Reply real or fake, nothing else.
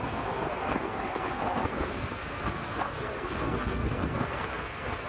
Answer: fake